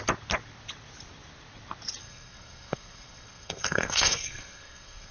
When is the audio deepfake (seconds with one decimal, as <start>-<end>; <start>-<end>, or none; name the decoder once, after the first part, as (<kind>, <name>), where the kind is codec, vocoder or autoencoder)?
2.0-5.1 (codec, SNAC)